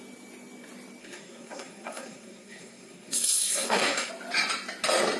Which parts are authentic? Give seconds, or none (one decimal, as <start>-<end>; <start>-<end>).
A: 0.0-1.0; 4.1-5.2